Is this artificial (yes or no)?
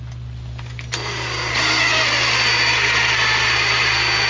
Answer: no